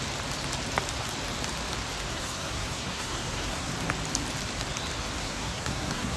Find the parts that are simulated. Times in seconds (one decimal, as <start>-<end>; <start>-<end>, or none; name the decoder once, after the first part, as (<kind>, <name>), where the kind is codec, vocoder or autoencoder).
2.1-3.7 (codec, SNAC); 5.2-6.2